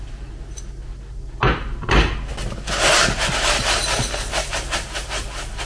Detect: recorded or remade recorded